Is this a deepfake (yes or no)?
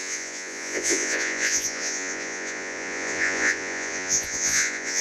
yes